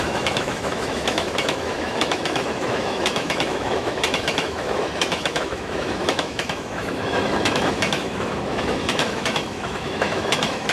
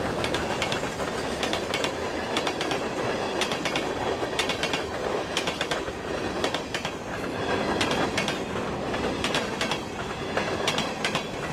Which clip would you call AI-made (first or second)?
first